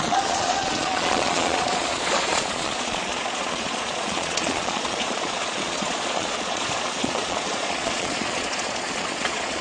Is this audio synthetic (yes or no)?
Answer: yes